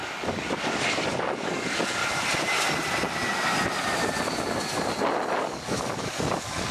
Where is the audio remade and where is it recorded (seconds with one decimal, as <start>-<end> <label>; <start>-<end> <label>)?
0.0-2.0 remade; 2.0-5.4 recorded; 5.4-6.7 remade